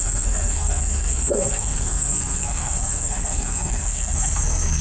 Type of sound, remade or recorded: remade